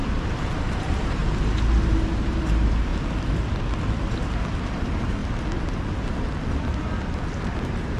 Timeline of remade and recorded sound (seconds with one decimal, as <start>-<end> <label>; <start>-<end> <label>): 0.0-1.2 remade; 1.2-1.7 recorded; 1.7-2.9 remade; 2.9-4.7 recorded; 4.7-5.2 remade; 5.2-7.4 recorded; 7.4-8.0 remade

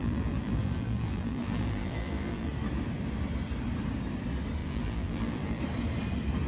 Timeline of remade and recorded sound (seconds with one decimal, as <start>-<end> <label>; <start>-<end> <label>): 0.0-2.5 remade; 2.5-4.6 recorded; 4.6-5.6 remade; 5.6-6.5 recorded

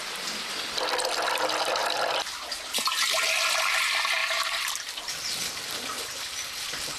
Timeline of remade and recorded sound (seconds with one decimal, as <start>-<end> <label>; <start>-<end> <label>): 0.0-1.8 recorded; 1.8-2.6 remade; 2.6-4.2 recorded; 4.2-5.4 remade; 5.4-7.0 recorded

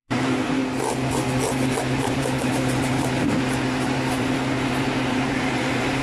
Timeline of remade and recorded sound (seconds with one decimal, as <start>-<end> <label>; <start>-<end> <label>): 0.0-0.6 remade; 0.6-1.8 recorded; 1.8-6.0 remade

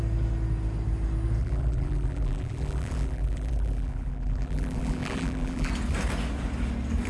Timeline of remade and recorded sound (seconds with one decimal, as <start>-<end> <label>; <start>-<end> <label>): 0.0-1.4 recorded; 1.4-5.7 remade; 5.7-7.1 recorded

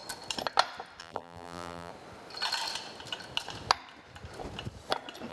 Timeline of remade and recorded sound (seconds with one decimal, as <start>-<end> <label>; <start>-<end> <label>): 0.0-1.0 recorded; 1.0-1.9 remade; 1.9-5.3 recorded